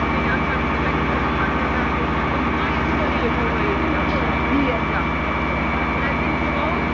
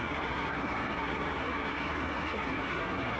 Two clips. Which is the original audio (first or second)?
first